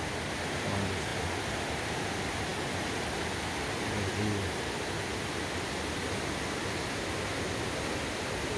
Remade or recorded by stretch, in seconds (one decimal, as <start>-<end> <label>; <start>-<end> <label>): 0.0-8.6 recorded